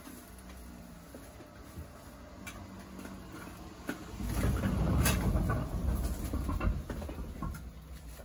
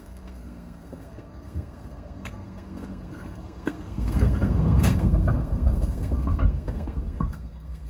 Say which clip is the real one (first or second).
first